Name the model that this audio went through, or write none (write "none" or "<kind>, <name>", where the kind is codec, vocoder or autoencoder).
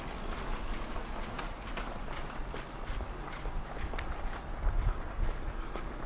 none